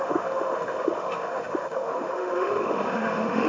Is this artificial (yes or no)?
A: yes